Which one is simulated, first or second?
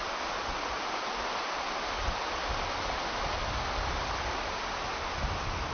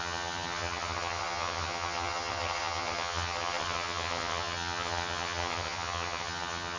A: second